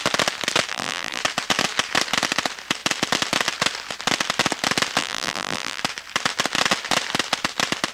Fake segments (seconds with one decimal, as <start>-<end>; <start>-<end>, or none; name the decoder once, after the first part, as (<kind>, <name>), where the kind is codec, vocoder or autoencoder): 0.7-1.2 (vocoder, BigVGAN v2); 5.0-5.8